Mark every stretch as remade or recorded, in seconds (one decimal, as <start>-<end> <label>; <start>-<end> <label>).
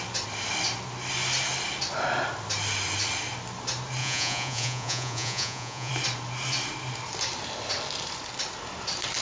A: 0.0-4.0 recorded; 4.0-5.9 remade; 5.9-9.2 recorded